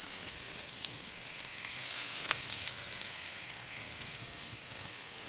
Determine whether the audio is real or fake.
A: fake